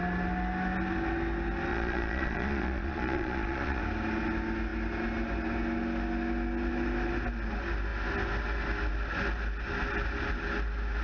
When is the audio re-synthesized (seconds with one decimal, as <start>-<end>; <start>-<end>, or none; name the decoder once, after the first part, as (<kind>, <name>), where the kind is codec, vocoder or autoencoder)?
1.7-3.8 (vocoder, Vocos)